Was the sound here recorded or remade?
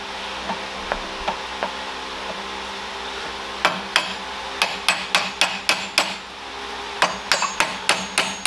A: recorded